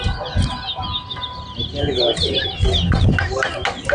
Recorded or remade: recorded